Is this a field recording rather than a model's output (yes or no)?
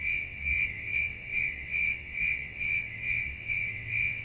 no